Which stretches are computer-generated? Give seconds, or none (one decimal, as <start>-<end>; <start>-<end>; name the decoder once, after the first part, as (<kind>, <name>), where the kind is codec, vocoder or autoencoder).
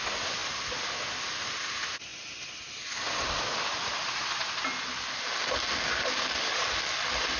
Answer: none